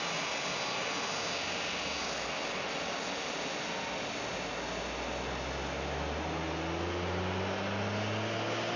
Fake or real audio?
real